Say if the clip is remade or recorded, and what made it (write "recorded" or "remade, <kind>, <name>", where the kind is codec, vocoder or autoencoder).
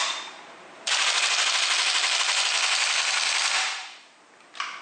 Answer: recorded